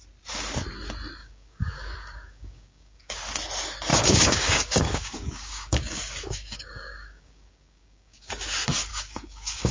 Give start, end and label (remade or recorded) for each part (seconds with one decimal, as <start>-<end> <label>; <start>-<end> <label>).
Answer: 0.0-1.2 recorded; 1.2-3.2 remade; 3.2-3.9 recorded; 3.9-8.3 remade; 8.3-8.9 recorded; 8.9-9.7 remade